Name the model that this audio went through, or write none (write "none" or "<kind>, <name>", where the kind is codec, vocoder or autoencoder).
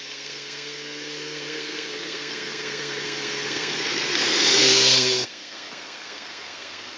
codec, SNAC